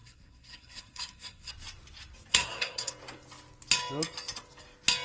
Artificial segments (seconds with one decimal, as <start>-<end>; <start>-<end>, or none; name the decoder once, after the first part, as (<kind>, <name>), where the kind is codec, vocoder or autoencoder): 0.0-1.5 (codec, SNAC); 2.3-2.9